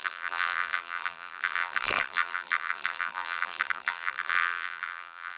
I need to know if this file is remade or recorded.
remade